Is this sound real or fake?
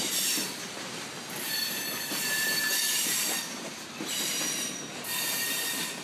fake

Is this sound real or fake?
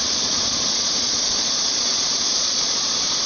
fake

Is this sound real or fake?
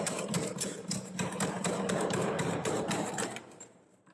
fake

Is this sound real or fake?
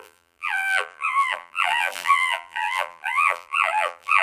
fake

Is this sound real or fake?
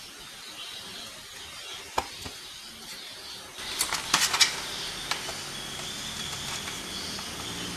real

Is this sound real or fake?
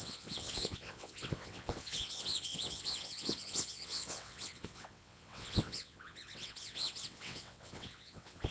fake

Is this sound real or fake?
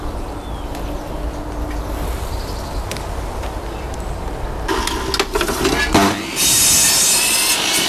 real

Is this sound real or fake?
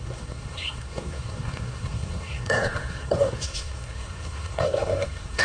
fake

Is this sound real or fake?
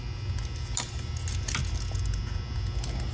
real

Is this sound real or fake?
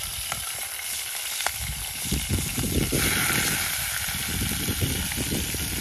real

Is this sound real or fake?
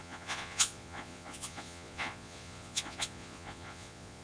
fake